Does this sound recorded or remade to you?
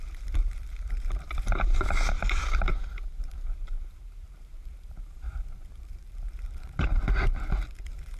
remade